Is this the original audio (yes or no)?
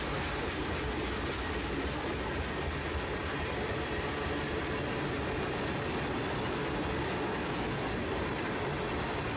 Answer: yes